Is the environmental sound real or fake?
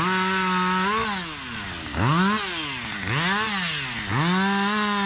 real